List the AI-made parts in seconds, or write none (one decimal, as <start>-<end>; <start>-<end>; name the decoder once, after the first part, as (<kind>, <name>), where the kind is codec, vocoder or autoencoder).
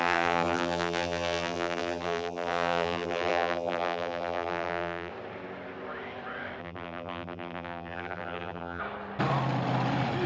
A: 0.0-5.1 (vocoder, BigVGAN v2); 6.6-8.8